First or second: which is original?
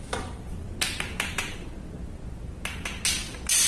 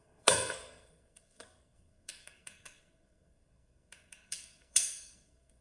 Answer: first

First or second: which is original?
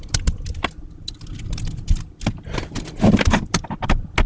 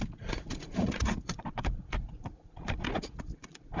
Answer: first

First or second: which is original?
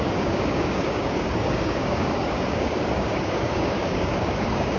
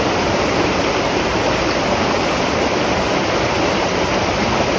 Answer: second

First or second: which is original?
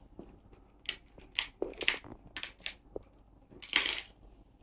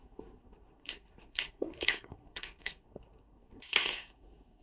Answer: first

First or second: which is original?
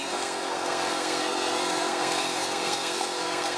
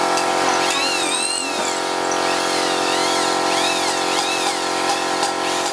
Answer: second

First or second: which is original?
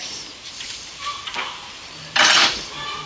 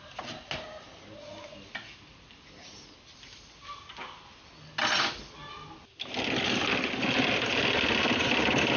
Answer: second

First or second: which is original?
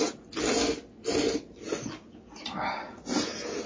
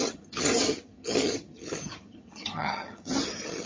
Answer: first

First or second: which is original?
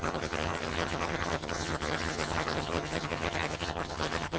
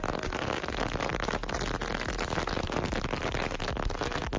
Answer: second